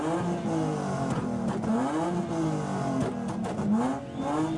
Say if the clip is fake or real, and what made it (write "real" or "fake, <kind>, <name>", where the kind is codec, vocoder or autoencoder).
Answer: real